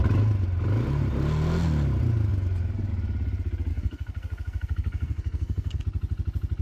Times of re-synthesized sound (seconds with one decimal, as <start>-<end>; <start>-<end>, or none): 3.7-5.8